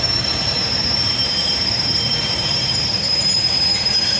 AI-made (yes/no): yes